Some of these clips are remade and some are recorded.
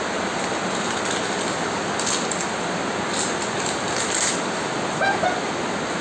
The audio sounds recorded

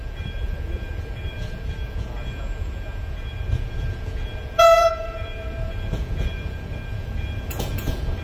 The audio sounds remade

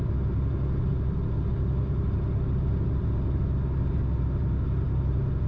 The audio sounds recorded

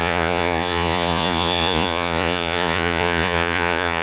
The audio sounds remade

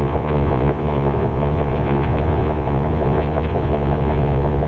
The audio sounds remade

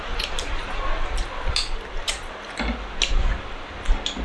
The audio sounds recorded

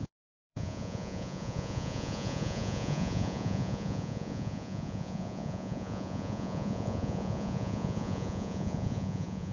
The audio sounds remade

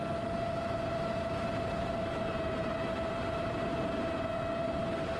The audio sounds recorded